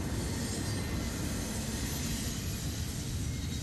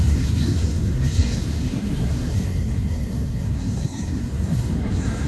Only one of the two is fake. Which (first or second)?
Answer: second